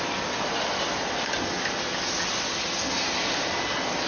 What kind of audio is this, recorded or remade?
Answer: recorded